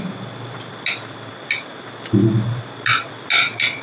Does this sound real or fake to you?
real